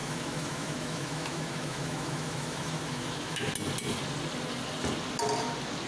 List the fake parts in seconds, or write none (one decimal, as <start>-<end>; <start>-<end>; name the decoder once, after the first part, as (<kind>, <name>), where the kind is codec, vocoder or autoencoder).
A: 0.0-3.5 (autoencoder, DAC-VAE)

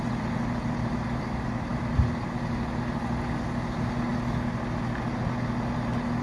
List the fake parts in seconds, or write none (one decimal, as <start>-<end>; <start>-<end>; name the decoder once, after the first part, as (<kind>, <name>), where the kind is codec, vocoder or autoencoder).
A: none

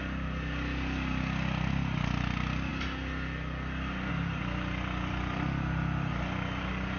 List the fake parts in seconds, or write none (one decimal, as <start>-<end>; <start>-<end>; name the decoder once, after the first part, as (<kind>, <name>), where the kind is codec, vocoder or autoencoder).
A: none

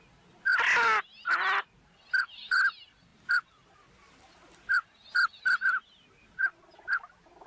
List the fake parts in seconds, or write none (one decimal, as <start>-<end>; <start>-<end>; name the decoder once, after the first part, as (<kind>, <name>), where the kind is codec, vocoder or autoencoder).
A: 3.1-6.3 (vocoder, BigVGAN v2)